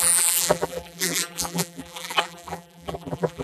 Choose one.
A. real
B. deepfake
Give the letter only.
B